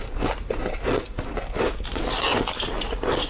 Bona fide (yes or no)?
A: yes